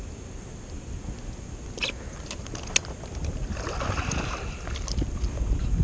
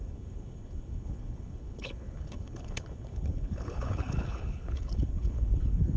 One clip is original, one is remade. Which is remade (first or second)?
second